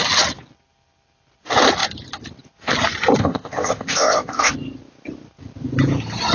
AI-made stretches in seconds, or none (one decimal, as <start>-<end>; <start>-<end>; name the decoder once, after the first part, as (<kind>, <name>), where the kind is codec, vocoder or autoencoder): 3.2-4.5 (codec, ZipCodec)